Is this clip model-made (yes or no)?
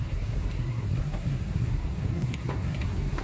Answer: yes